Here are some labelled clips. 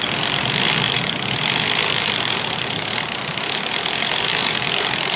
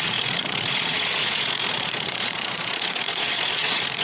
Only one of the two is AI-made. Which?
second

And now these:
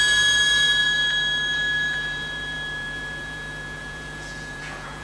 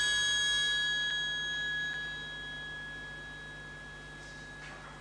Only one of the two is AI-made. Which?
first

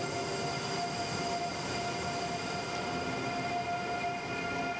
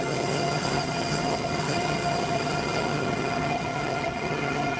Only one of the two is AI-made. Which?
second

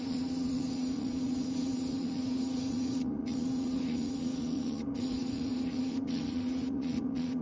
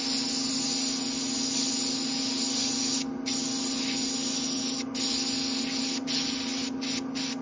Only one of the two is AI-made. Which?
first